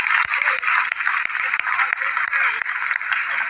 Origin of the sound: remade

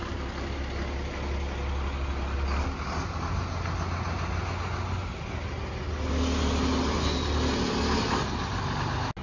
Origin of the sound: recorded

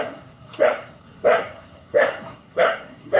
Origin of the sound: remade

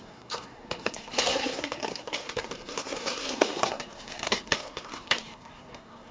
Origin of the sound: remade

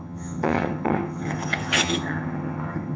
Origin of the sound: remade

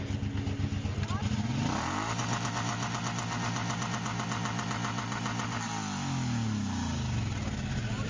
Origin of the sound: recorded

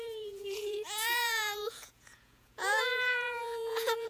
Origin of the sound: remade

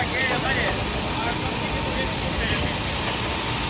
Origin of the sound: recorded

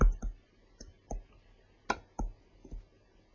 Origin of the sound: recorded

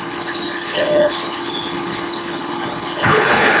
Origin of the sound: remade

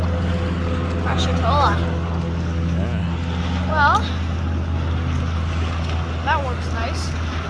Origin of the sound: recorded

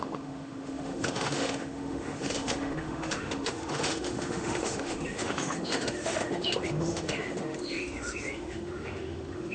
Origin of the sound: remade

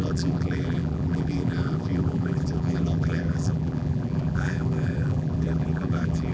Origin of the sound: remade